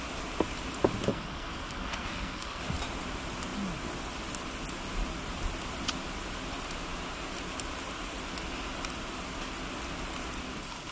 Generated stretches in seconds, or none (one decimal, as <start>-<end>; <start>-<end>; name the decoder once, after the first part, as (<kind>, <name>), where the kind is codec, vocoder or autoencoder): 1.1-2.6 (codec, SNAC)